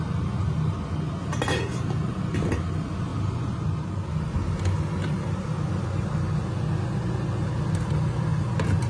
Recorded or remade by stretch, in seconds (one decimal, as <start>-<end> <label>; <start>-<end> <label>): 0.0-8.9 recorded